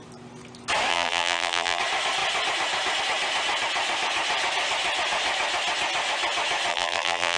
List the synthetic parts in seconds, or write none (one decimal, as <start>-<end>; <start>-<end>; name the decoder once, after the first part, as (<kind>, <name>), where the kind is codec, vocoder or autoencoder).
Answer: 0.9-1.8 (vocoder, BigVGAN v2); 6.7-7.4